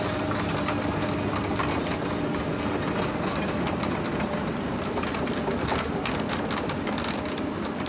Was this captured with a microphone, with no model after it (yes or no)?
yes